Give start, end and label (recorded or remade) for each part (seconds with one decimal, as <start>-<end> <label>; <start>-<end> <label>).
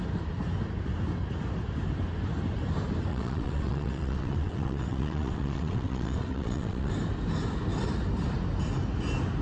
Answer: 0.0-3.1 recorded; 3.1-6.9 remade; 6.9-9.4 recorded